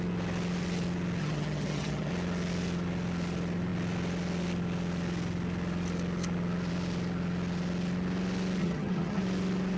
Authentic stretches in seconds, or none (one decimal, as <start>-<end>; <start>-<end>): 0.0-1.2; 2.1-8.6; 9.2-9.8